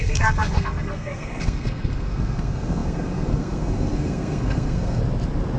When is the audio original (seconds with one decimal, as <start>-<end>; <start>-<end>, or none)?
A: 5.0-5.6